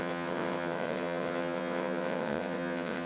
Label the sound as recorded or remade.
remade